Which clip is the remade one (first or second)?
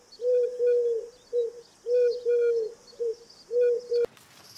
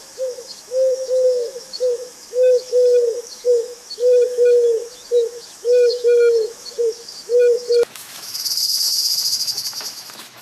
second